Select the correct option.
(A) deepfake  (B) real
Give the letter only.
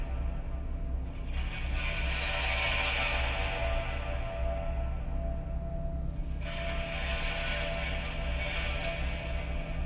B